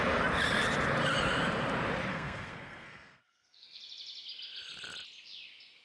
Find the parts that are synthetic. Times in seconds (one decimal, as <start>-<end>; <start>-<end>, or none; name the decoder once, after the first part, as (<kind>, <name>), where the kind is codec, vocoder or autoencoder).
2.1-3.8 (codec, SNAC)